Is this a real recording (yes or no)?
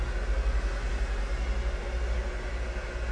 yes